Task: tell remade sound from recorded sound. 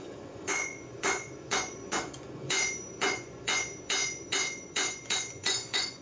remade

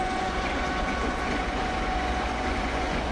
remade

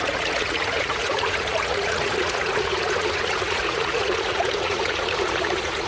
remade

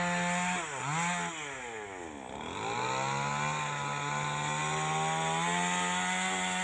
recorded